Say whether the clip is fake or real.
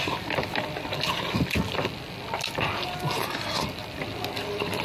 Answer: real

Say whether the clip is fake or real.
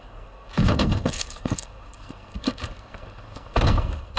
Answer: fake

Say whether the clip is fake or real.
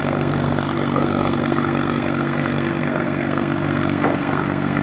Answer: fake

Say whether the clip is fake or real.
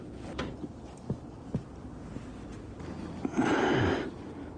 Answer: real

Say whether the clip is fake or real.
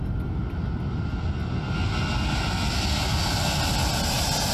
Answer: real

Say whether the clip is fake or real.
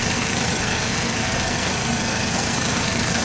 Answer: fake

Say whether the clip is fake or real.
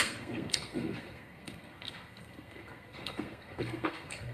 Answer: fake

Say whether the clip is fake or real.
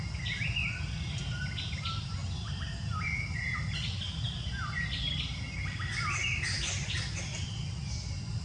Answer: real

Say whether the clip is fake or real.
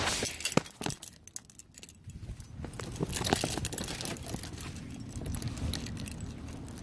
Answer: real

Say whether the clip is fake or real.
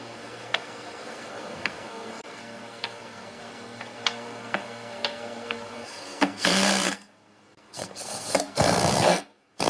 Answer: fake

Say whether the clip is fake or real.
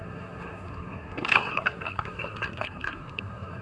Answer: fake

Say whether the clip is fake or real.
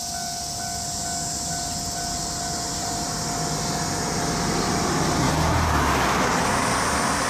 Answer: real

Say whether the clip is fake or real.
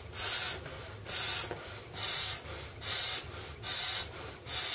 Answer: real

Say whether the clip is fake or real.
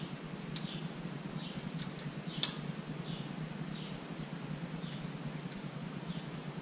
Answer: real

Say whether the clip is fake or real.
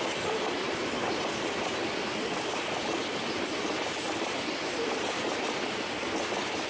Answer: real